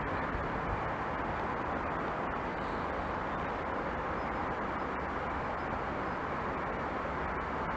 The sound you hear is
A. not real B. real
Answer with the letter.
B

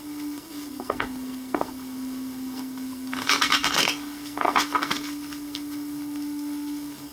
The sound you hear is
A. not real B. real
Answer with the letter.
A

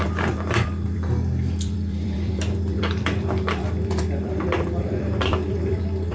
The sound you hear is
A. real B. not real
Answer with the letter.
B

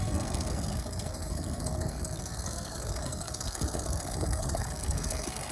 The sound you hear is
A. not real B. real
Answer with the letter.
A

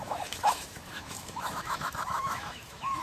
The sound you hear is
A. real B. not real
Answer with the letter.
B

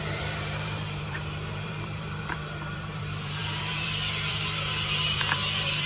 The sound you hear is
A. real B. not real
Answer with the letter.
B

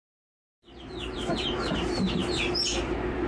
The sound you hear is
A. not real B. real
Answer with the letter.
A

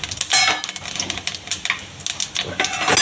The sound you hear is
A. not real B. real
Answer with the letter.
B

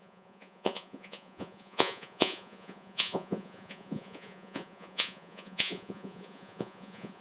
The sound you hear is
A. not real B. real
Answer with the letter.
A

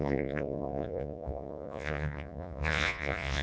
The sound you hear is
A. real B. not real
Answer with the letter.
B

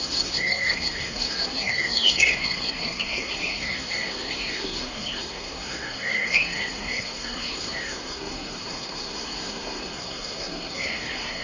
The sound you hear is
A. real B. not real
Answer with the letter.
B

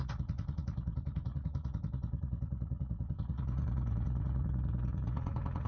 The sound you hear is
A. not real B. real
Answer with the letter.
A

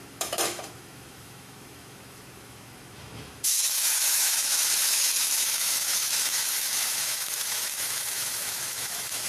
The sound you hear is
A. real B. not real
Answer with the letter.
B